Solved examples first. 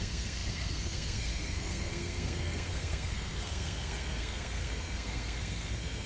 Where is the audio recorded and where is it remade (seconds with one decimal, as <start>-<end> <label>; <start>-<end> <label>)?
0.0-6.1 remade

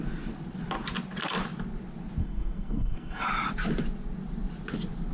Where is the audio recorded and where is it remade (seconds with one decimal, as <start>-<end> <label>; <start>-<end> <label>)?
0.0-2.2 recorded; 2.2-3.3 remade; 3.3-5.1 recorded

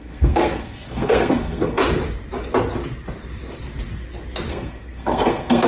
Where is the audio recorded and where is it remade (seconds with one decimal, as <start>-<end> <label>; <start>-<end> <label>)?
0.0-1.8 remade; 1.8-4.5 recorded; 4.5-5.7 remade

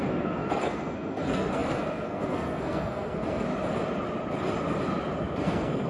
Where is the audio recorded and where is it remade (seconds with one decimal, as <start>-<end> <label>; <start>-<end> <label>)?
0.0-3.5 remade; 3.5-5.4 recorded; 5.4-5.9 remade